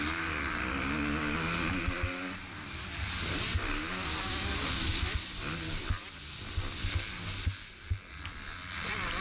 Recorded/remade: recorded